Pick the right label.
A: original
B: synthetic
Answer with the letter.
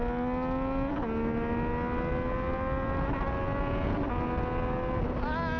A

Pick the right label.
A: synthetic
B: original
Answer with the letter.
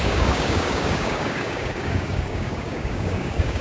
A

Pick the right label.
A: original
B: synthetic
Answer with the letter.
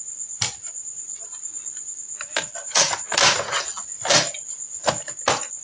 A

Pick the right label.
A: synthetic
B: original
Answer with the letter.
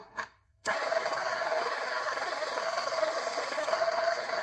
A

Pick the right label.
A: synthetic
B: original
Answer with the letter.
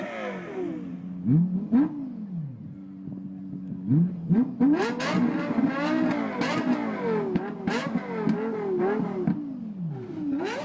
B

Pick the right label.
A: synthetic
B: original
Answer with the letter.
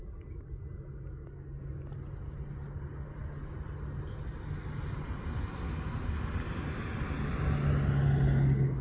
B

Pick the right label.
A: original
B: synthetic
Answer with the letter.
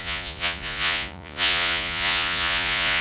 B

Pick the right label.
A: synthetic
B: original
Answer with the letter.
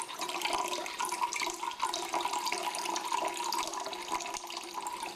B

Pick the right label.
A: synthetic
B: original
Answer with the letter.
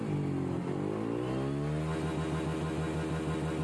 B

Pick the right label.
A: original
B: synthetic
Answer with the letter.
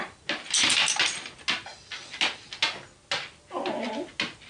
A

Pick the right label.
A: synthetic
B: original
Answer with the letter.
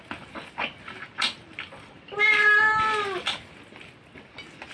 B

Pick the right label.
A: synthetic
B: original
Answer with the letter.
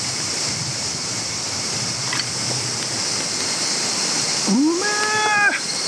B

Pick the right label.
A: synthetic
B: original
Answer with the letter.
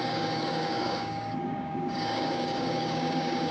A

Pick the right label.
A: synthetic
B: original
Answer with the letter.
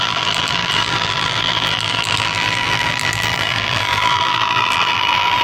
A